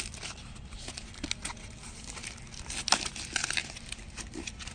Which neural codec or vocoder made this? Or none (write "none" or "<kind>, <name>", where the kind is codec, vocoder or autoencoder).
none